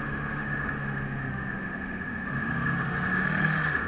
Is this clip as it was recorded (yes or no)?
no